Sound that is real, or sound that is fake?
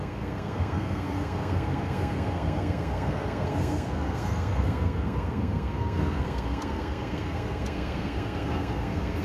fake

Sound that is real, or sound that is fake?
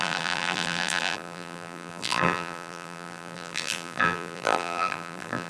fake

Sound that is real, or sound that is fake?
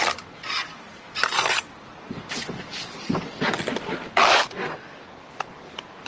real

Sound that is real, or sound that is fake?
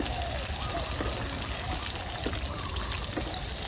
real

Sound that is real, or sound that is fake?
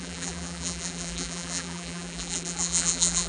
fake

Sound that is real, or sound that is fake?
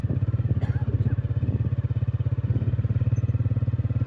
real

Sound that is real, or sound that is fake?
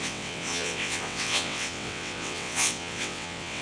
fake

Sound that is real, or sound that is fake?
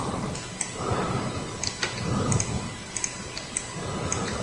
real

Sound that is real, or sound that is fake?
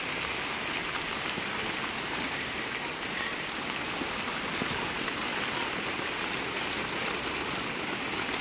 real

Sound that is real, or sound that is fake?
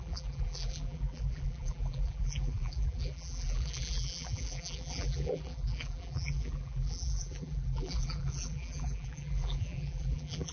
fake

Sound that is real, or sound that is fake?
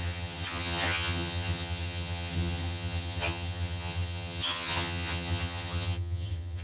fake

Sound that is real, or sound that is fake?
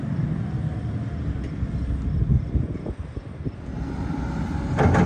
real